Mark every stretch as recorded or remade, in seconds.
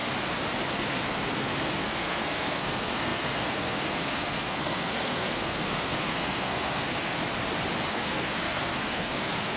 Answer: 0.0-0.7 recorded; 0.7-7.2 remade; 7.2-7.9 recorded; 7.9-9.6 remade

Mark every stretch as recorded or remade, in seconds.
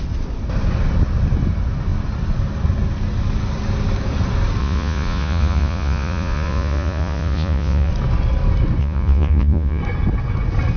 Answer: 0.0-4.6 recorded; 4.6-7.9 remade; 7.9-8.8 recorded; 8.8-9.8 remade; 9.8-10.8 recorded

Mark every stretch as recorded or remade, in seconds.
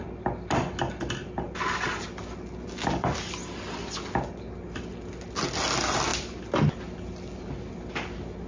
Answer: 0.0-8.5 recorded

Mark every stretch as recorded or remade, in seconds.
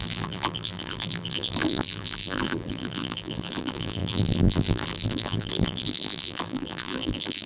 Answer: 0.0-7.5 remade